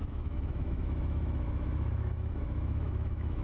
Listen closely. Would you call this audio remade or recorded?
remade